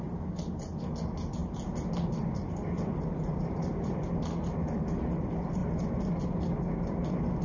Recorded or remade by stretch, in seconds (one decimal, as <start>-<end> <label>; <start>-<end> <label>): 0.0-7.4 recorded